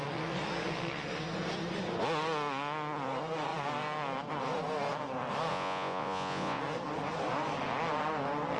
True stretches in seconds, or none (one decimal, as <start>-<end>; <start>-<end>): 0.0-5.5; 6.6-8.6